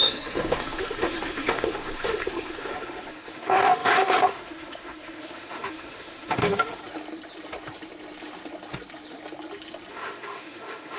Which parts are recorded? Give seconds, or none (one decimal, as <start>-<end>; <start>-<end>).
6.8-9.9

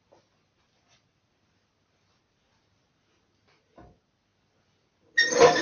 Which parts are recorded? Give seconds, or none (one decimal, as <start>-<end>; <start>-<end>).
0.0-5.6